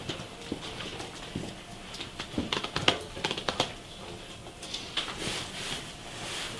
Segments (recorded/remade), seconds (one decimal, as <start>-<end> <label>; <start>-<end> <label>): 0.0-6.6 recorded